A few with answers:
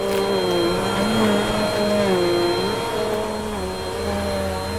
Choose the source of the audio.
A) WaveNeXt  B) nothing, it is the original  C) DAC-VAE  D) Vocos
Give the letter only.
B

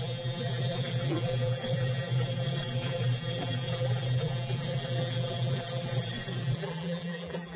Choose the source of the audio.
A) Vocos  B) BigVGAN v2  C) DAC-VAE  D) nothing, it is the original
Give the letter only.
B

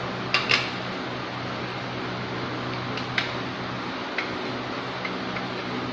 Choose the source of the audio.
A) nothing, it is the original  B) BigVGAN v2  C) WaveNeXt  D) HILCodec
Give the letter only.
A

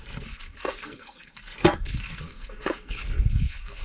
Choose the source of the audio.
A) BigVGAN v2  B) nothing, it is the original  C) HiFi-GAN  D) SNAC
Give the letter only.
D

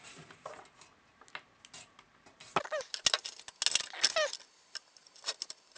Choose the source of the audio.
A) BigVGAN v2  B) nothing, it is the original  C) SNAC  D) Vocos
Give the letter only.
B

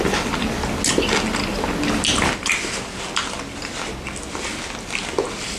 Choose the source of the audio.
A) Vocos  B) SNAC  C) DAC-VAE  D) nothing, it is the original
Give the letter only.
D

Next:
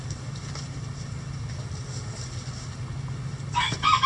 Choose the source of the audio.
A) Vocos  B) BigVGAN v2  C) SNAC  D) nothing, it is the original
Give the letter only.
D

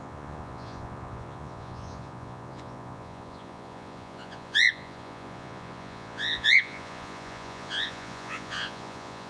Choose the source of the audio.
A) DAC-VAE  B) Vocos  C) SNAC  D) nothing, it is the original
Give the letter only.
B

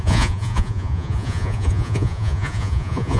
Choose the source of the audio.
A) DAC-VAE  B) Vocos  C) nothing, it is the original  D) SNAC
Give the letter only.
B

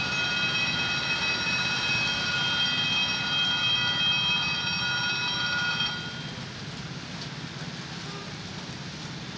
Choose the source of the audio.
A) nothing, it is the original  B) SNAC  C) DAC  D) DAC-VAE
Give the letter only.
A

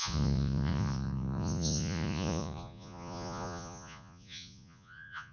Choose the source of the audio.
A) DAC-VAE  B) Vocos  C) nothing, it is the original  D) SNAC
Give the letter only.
B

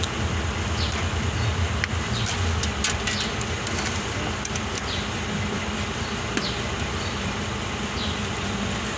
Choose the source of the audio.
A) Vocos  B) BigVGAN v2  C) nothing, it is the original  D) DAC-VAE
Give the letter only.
C